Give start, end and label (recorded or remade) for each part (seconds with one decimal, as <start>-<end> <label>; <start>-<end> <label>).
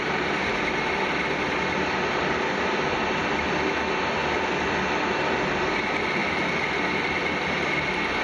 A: 0.0-8.2 recorded